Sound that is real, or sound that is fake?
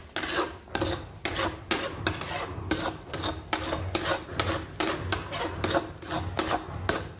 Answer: real